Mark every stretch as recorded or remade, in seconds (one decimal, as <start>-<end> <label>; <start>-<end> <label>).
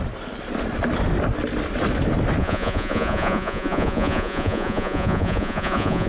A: 0.0-2.4 recorded; 2.4-6.1 remade